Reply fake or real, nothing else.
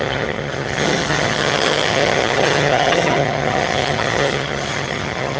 fake